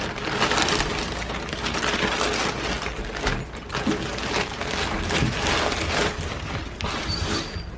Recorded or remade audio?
recorded